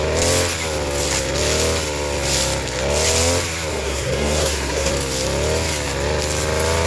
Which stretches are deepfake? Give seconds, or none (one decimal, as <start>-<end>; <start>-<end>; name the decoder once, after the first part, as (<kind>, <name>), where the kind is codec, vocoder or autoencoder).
3.7-4.9 (codec, SNAC)